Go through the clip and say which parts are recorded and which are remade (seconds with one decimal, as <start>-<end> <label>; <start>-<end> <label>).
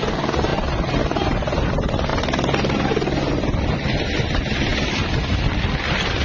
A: 0.0-6.2 recorded